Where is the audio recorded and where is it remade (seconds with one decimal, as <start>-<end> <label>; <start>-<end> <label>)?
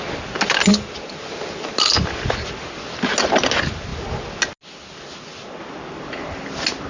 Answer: 0.0-6.9 recorded